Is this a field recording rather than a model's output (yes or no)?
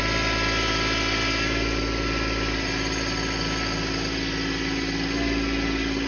yes